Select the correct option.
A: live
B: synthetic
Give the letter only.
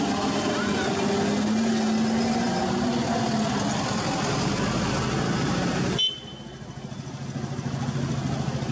A